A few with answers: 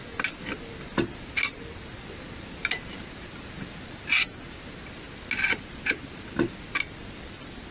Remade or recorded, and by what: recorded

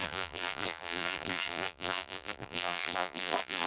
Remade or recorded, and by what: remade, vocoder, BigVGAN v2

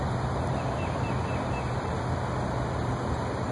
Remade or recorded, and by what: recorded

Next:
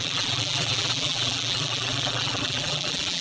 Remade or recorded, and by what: remade, vocoder, BigVGAN v2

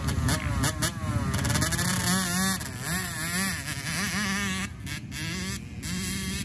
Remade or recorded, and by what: recorded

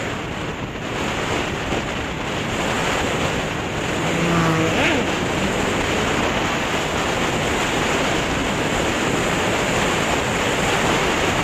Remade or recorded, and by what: recorded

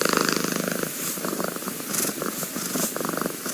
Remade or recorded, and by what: remade, vocoder, BigVGAN v2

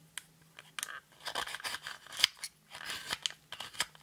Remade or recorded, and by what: recorded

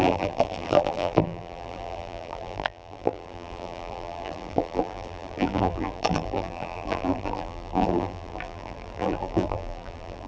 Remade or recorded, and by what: remade, vocoder, BigVGAN v2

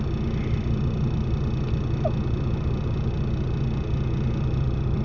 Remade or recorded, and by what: recorded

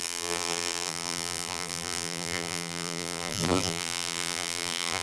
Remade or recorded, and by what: remade, vocoder, BigVGAN v2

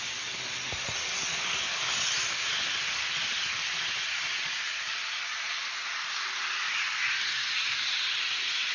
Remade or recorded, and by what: recorded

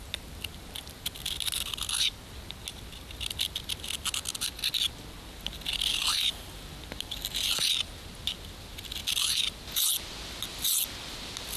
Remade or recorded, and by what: recorded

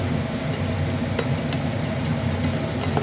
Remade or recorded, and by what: recorded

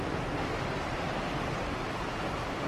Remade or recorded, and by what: recorded